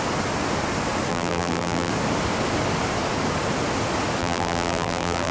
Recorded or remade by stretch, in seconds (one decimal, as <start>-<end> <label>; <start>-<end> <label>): 0.0-1.1 recorded; 1.1-1.9 remade; 1.9-4.2 recorded; 4.2-5.3 remade